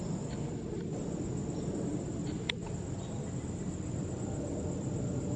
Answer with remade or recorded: recorded